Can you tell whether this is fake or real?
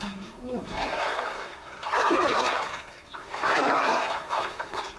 fake